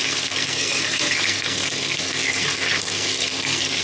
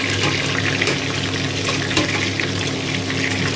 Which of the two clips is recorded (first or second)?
second